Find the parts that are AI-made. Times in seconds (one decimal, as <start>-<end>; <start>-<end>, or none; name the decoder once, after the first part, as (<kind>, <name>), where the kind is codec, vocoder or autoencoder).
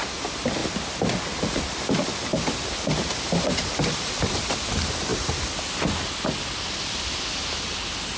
none